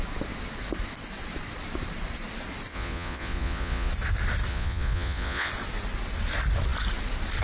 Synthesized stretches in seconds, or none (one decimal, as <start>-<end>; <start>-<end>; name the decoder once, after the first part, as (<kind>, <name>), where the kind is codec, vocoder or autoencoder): 2.7-3.9 (vocoder, Vocos); 4.5-5.5